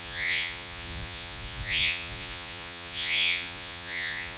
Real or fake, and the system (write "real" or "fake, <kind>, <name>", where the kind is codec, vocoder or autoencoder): fake, vocoder, Vocos